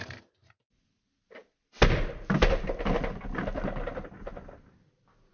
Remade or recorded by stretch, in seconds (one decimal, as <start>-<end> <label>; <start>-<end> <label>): 0.0-5.3 recorded